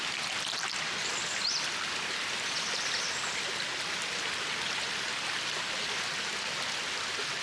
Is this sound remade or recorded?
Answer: recorded